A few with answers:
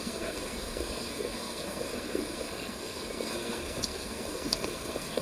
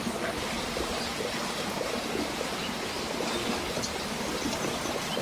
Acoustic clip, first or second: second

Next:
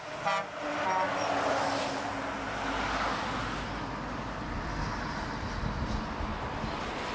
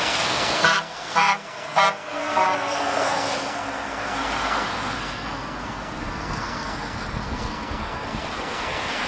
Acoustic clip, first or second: first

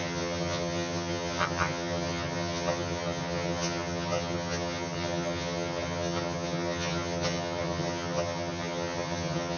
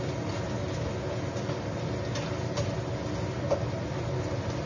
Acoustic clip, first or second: second